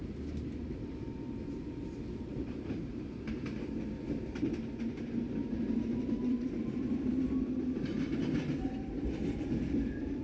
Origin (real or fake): fake